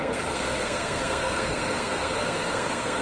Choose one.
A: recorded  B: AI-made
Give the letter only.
B